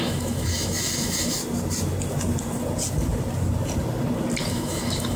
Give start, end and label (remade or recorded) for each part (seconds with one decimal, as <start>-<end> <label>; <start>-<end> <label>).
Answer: 0.0-1.4 remade; 1.4-4.5 recorded; 4.5-5.2 remade